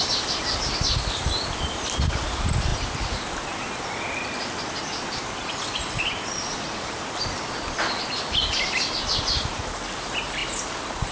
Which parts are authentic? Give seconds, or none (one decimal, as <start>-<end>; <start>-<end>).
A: 0.0-11.1